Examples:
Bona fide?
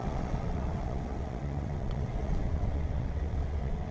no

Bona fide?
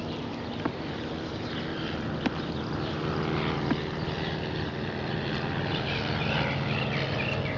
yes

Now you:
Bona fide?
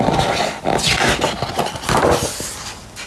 yes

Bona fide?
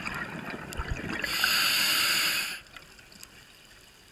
yes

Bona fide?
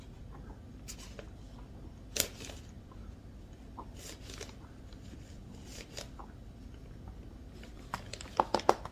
yes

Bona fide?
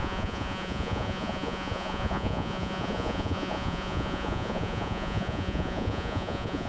no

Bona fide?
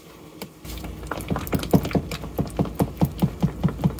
yes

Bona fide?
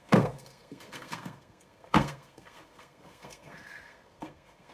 no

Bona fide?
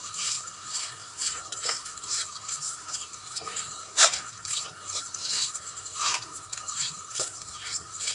no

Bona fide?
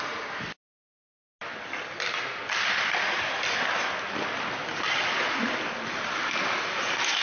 yes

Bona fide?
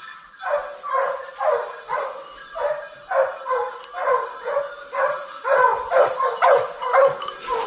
yes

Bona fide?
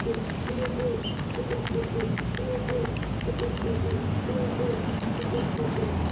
yes